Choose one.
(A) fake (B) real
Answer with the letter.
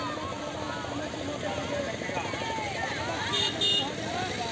B